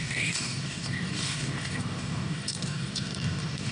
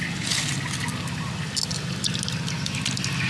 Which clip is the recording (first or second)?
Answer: second